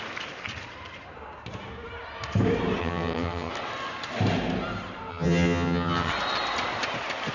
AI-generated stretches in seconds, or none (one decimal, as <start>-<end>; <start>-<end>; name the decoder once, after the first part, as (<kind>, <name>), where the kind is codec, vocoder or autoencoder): 2.8-3.5 (vocoder, HiFi-GAN); 5.1-6.1